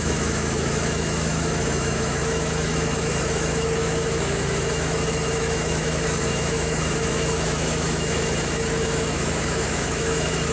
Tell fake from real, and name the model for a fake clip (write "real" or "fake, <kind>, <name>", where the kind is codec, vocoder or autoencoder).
fake, autoencoder, DAC-VAE